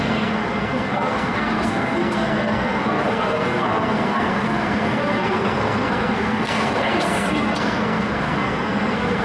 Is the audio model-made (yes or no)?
yes